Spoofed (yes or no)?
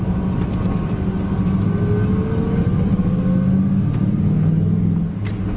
no